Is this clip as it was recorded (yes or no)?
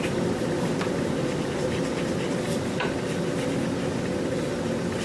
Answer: yes